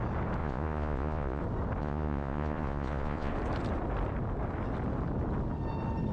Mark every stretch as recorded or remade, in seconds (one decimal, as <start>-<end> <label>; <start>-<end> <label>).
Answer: 0.0-0.4 recorded; 0.4-1.4 remade; 1.4-1.8 recorded; 1.8-3.3 remade; 3.3-6.1 recorded